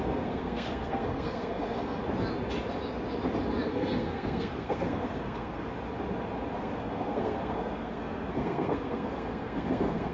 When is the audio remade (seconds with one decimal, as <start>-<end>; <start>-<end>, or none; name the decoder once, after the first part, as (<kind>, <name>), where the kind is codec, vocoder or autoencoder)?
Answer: 0.0-2.0 (codec, SNAC); 3.7-5.7; 6.6-10.1